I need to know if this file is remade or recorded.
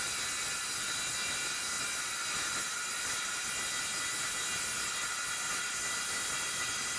recorded